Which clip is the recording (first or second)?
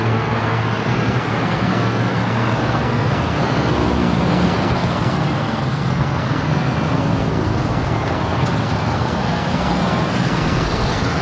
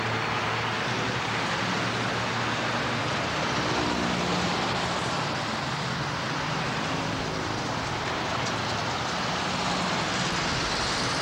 second